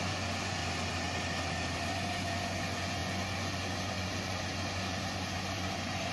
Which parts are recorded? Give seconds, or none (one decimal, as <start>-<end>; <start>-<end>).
0.6-1.9